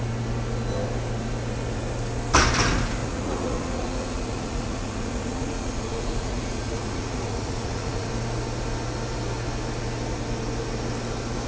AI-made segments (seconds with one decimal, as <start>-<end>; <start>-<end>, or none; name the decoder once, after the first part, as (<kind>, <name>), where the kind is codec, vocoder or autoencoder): 3.0-8.1 (vocoder, Vocos)